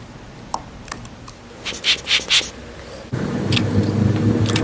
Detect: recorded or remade recorded